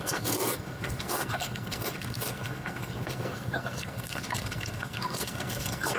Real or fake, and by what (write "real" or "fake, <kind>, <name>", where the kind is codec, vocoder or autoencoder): fake, codec, SNAC